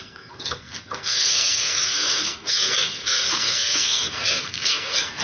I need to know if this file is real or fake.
fake